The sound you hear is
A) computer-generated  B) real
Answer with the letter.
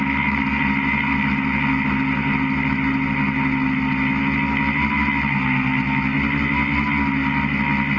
B